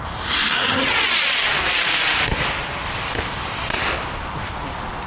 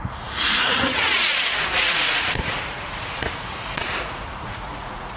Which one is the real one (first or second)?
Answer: first